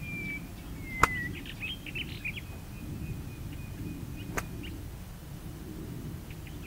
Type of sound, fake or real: real